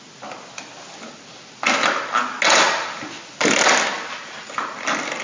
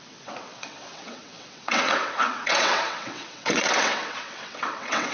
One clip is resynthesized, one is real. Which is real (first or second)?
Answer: first